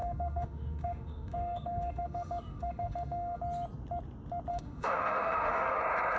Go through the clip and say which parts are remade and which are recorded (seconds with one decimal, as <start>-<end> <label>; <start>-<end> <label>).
0.0-3.4 remade; 3.4-4.5 recorded; 4.5-5.8 remade; 5.8-6.2 recorded